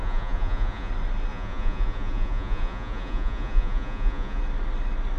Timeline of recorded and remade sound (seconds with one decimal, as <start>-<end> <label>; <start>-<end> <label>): 0.0-0.9 remade; 0.9-1.3 recorded; 1.3-4.4 remade; 4.4-5.2 recorded